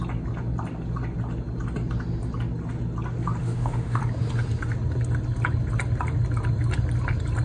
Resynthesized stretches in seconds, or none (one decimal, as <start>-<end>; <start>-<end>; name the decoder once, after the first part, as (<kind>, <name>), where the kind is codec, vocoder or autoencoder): 3.4-4.0 (autoencoder, DAC-VAE)